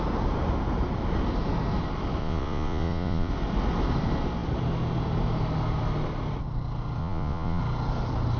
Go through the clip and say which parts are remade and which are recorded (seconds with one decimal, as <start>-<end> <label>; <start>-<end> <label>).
0.0-2.2 recorded; 2.2-3.3 remade; 3.3-7.0 recorded; 7.0-7.6 remade; 7.6-8.4 recorded